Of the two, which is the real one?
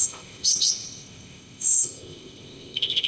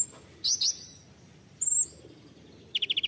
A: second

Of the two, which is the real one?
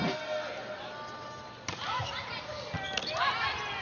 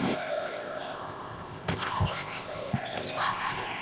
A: first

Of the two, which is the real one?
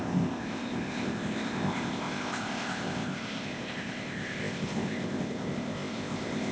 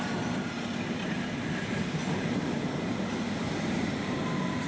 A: second